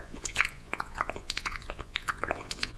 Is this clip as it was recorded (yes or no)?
no